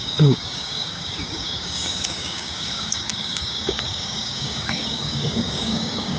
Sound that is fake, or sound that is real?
fake